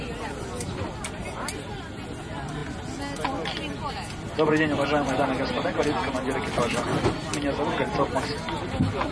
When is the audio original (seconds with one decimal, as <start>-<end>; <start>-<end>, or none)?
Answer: 0.0-9.1